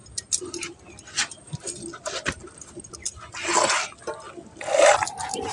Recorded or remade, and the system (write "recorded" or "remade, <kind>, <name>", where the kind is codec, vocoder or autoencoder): recorded